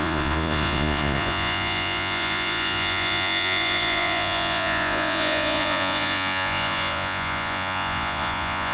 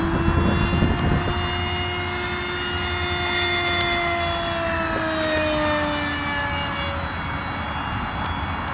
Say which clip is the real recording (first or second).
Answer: second